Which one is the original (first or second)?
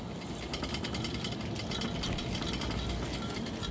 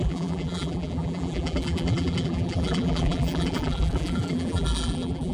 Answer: first